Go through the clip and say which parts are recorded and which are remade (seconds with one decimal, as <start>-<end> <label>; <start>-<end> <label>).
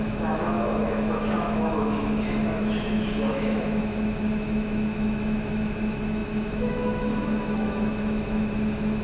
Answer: 0.0-9.0 remade